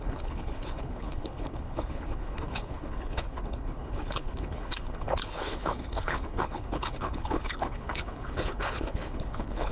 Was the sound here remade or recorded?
remade